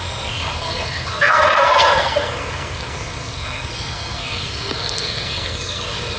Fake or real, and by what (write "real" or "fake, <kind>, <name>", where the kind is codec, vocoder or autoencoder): fake, codec, SNAC